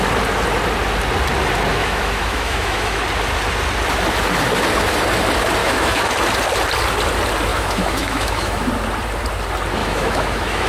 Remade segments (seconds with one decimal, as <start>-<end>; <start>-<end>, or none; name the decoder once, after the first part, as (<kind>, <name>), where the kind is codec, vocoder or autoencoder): 1.7-3.0 (autoencoder, DAC-VAE); 5.6-6.1; 7.5-8.7; 9.8-10.7